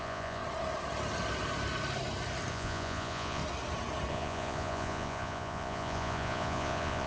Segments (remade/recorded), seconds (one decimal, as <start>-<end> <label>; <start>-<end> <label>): 0.0-0.4 remade; 0.4-2.5 recorded; 2.5-3.4 remade; 3.4-4.1 recorded; 4.1-7.1 remade